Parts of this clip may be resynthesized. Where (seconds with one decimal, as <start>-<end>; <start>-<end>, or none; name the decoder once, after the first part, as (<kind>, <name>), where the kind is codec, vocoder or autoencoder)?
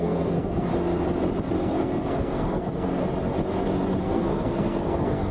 0.0-0.7 (codec, SNAC); 1.6-3.0; 4.0-5.3